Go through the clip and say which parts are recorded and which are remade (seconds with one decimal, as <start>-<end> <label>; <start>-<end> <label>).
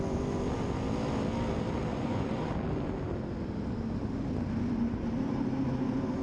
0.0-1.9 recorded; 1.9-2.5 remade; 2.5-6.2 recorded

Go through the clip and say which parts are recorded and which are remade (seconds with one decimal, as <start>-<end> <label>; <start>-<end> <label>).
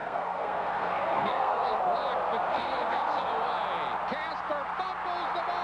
0.0-1.8 remade; 1.8-2.5 recorded; 2.5-3.3 remade; 3.3-5.6 recorded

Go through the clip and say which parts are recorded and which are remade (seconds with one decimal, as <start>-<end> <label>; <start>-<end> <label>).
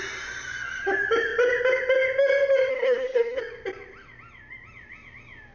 0.0-2.7 recorded; 2.7-3.4 remade; 3.4-5.5 recorded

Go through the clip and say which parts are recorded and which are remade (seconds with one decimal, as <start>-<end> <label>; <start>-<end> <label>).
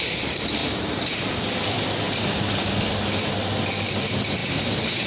0.0-0.6 recorded; 0.6-1.3 remade; 1.3-4.4 recorded; 4.4-5.1 remade